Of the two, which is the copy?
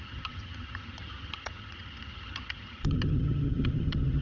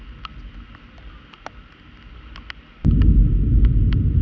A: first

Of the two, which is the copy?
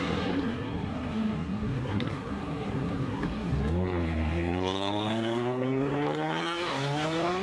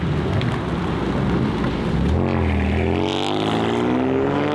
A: first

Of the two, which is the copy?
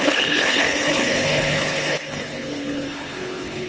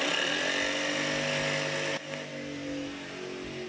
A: first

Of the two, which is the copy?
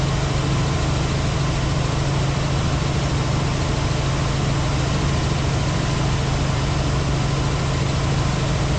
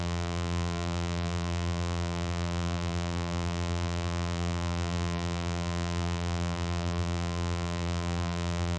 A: second